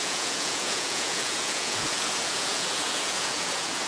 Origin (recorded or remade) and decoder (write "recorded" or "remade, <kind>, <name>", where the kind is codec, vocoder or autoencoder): remade, vocoder, Vocos